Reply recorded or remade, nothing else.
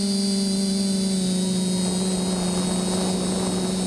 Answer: recorded